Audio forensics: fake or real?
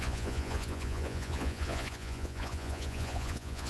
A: fake